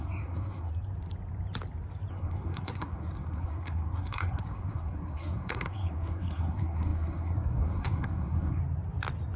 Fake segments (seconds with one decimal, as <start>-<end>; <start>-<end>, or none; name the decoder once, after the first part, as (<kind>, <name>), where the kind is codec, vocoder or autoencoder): 0.0-0.7 (codec, SNAC); 2.1-8.6